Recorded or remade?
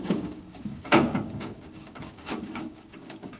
remade